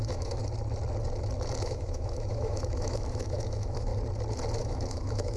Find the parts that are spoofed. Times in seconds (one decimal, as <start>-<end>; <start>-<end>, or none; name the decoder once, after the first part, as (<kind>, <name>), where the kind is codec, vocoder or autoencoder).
0.0-0.4 (autoencoder, DAC-VAE); 1.6-3.9; 4.6-5.4